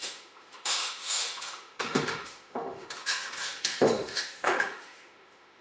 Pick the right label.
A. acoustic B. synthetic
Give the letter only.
B